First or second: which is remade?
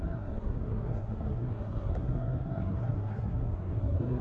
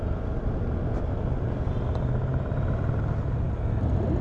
first